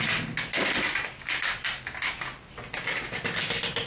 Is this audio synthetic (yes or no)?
no